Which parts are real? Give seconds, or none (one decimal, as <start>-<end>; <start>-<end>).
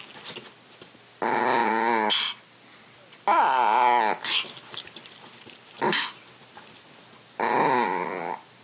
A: 0.0-8.6